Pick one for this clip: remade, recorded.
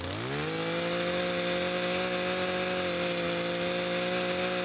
recorded